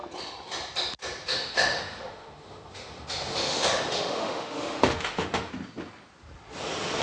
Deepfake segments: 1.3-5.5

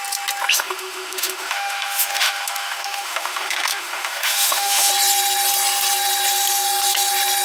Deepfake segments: 0.5-4.9

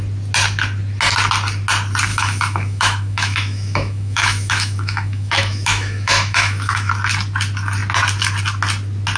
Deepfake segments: 2.1-6.9

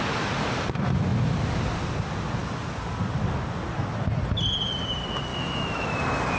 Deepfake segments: 5.3-6.0

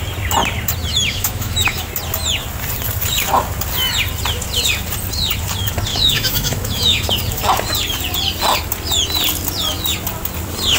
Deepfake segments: 0.9-1.9; 5.9-7.1